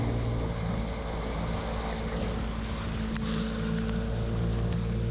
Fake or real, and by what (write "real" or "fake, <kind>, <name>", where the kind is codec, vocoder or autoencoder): real